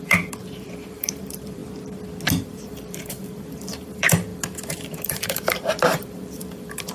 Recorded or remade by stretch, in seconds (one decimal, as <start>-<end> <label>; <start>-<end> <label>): 0.0-1.6 remade; 1.6-2.3 recorded; 2.3-6.9 remade